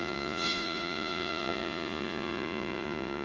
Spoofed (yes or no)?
yes